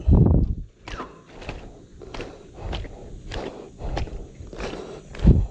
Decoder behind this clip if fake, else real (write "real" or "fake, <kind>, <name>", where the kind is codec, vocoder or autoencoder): real